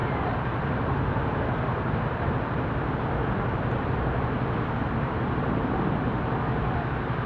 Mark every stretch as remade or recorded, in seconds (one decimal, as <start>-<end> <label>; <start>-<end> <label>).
0.0-2.3 remade; 2.3-4.8 recorded; 4.8-5.7 remade; 5.7-7.3 recorded